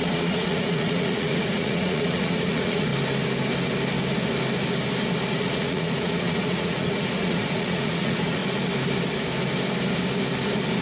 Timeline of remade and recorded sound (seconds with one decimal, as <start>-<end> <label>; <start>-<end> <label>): 0.0-2.9 remade; 2.9-5.4 recorded; 5.4-8.4 remade; 8.4-10.8 recorded